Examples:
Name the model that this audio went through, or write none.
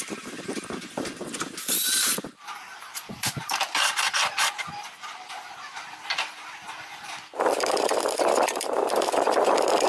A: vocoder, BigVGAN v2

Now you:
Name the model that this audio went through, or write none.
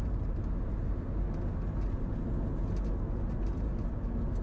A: none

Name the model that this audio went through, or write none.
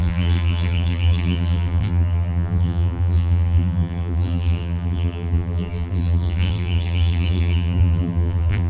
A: vocoder, BigVGAN v2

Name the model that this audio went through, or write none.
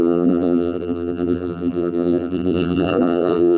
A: vocoder, BigVGAN v2